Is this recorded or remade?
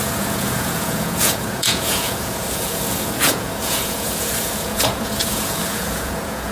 remade